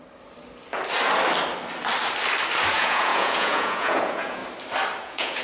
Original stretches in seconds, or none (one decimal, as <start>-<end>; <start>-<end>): 0.0-2.7; 4.4-5.0